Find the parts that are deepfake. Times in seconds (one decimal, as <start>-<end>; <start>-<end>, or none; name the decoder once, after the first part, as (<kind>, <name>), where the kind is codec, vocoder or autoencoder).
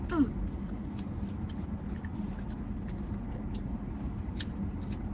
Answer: none